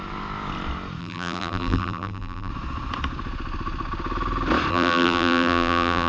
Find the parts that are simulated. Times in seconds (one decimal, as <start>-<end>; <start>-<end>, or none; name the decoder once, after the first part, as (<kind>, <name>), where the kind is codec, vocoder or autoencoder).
1.0-2.5 (vocoder, BigVGAN v2); 4.7-6.1

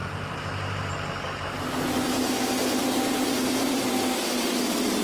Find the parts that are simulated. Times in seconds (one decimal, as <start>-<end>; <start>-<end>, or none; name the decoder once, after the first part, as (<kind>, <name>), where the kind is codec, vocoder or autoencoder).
0.0-0.9 (vocoder, BigVGAN v2); 2.8-3.9

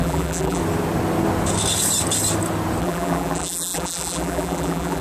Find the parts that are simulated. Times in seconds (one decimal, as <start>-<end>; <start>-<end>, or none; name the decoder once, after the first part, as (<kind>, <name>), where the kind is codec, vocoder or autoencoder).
0.0-0.6 (vocoder, BigVGAN v2); 2.8-5.0